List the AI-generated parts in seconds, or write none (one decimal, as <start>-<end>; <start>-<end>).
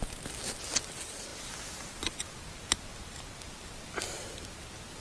none